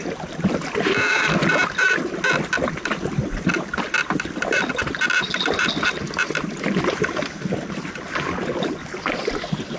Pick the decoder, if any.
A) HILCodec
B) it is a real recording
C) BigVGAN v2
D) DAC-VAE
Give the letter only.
B